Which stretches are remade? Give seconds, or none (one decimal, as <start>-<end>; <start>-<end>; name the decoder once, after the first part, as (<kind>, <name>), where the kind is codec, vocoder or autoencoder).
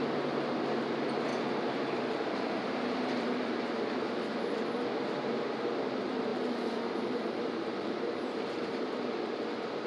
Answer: 1.3-3.6 (vocoder, BigVGAN v2); 6.3-8.8